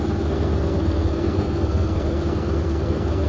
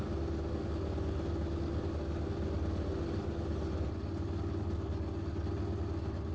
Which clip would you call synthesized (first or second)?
first